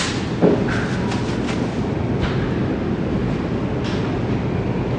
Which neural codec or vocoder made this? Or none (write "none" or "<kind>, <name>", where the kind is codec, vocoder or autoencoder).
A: none